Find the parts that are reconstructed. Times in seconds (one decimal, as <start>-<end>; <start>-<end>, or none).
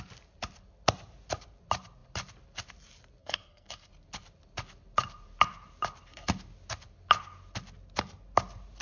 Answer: 3.2-3.9